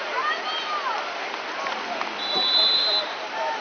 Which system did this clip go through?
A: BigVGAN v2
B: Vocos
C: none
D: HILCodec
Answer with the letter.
A